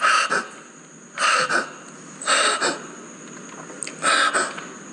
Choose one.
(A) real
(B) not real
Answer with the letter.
A